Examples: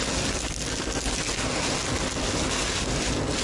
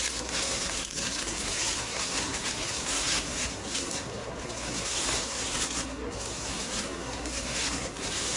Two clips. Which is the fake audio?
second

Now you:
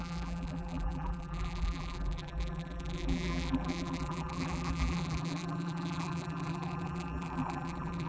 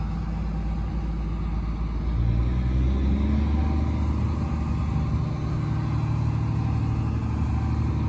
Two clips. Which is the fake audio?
first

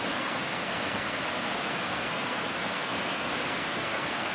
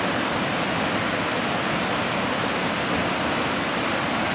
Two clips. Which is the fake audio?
first